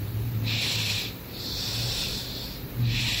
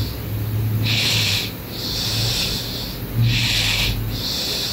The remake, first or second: first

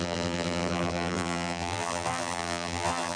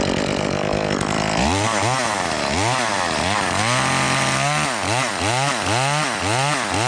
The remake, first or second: first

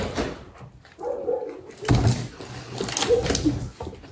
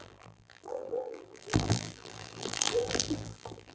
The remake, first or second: second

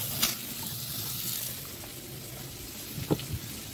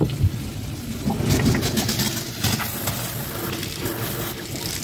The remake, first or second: first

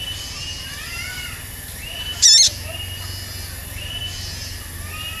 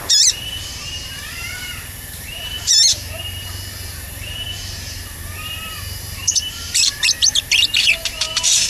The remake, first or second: second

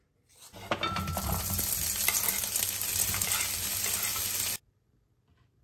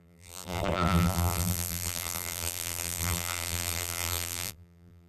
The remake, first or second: second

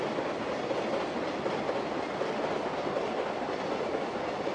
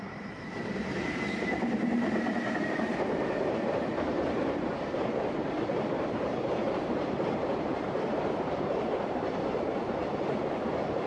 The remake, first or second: second